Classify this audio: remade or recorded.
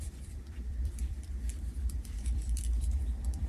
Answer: remade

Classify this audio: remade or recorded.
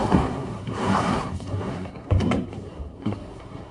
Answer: remade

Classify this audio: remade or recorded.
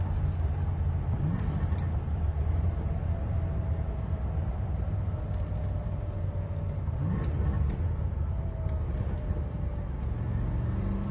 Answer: recorded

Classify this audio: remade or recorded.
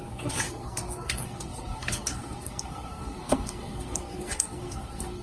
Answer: remade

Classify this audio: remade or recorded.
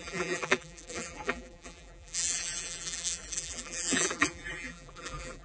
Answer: remade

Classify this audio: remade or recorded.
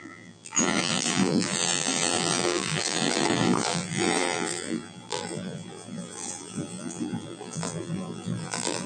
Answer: remade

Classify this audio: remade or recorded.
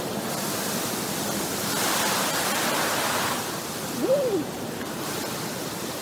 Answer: remade